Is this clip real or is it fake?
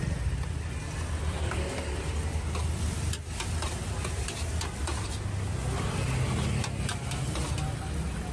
real